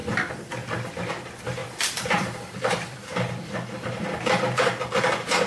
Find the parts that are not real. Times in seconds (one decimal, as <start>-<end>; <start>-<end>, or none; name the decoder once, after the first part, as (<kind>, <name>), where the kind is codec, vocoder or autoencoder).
0.0-1.1 (vocoder, BigVGAN v2); 1.6-4.9